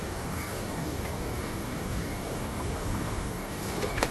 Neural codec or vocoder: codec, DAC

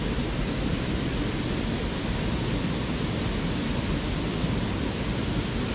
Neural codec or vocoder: none